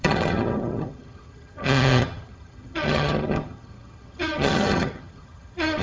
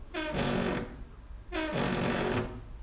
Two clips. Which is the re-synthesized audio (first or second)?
first